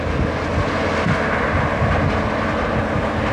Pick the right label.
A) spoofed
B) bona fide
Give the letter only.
B